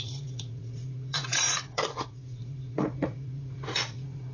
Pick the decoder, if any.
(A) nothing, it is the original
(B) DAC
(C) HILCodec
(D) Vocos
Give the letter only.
D